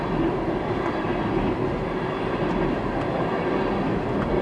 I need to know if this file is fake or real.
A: real